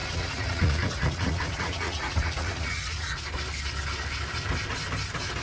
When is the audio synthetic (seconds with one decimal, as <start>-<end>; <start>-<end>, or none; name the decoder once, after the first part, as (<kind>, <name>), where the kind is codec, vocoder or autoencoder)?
0.0-3.2 (vocoder, Vocos)